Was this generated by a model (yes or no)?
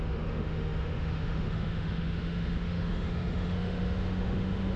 yes